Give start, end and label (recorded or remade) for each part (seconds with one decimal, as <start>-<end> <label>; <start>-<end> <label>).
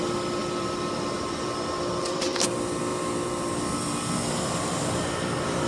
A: 0.0-0.4 recorded; 0.4-2.5 remade; 2.5-2.9 recorded; 2.9-4.6 remade; 4.6-5.7 recorded